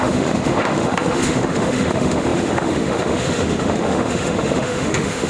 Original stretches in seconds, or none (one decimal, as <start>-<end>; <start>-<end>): none